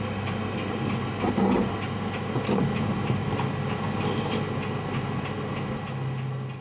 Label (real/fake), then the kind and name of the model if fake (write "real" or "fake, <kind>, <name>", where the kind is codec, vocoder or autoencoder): real